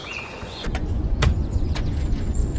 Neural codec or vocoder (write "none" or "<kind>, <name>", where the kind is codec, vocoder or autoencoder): vocoder, Vocos